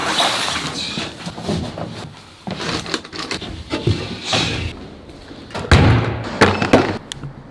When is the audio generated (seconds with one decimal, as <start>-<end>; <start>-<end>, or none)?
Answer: none